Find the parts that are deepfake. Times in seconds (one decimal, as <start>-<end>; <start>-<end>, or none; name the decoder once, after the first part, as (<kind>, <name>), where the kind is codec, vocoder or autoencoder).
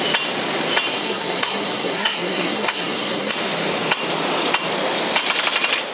0.9-3.3 (codec, SNAC)